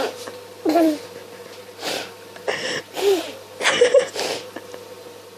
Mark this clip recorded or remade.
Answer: remade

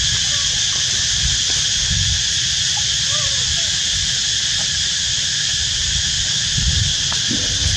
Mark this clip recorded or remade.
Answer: remade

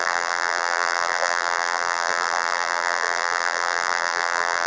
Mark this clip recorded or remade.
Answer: remade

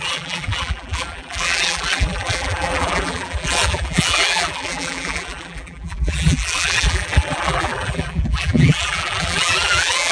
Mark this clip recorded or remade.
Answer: remade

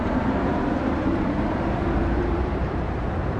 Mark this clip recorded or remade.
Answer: remade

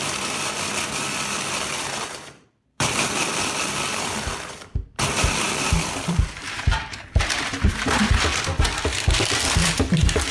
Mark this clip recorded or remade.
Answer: remade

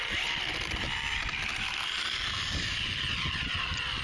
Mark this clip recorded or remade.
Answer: remade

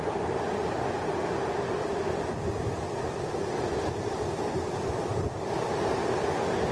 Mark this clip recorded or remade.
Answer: recorded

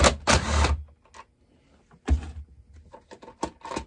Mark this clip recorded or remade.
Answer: recorded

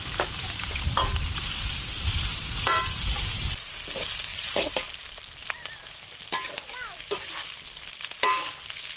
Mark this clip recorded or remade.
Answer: remade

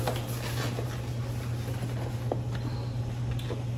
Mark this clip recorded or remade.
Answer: recorded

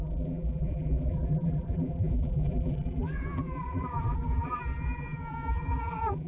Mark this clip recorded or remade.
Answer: remade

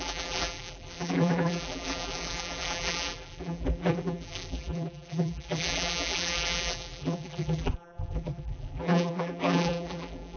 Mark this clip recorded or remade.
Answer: remade